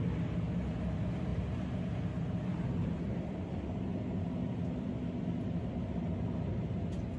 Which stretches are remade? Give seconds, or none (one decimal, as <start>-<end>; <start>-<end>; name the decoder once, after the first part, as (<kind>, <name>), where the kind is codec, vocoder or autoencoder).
none

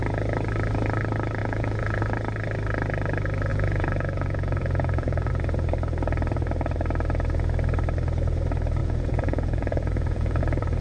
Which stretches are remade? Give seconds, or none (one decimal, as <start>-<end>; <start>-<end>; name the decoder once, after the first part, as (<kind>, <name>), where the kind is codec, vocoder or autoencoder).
1.4-2.0 (vocoder, Vocos); 3.5-5.3; 8.8-10.4

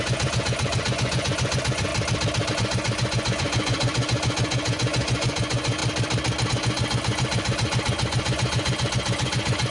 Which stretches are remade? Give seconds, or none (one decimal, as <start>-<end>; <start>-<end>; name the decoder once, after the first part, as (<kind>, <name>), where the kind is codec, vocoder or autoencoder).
0.0-1.9 (vocoder, Vocos); 2.5-5.8; 6.5-9.7

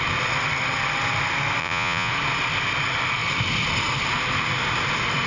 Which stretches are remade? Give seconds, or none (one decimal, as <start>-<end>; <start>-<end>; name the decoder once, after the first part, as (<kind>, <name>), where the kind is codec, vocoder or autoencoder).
1.6-2.1 (vocoder, Vocos)

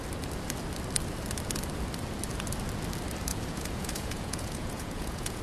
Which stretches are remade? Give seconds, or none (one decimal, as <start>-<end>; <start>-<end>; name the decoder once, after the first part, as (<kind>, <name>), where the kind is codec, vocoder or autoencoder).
3.3-5.4 (vocoder, Vocos)

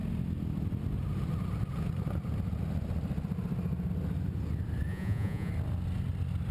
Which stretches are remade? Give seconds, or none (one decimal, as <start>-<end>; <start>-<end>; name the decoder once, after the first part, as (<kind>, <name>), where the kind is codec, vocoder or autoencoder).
4.9-5.5 (vocoder, Vocos)